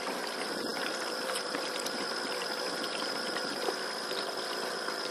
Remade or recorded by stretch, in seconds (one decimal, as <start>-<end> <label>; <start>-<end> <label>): 0.0-5.1 recorded